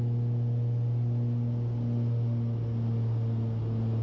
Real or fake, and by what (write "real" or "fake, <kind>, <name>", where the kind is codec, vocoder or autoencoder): real